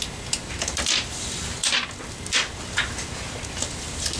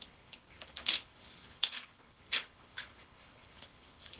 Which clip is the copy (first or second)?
second